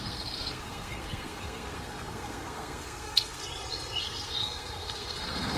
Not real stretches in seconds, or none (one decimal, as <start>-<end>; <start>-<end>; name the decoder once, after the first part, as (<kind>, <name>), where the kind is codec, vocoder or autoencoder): 0.0-3.4 (codec, SNAC); 4.0-5.6